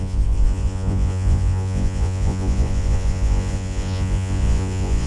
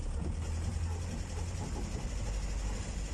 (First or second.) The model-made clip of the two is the first